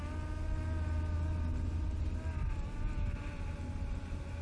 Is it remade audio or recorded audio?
recorded